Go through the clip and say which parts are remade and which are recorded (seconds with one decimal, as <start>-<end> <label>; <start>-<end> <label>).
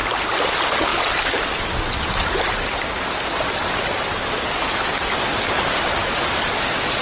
0.0-0.5 remade; 0.5-7.0 recorded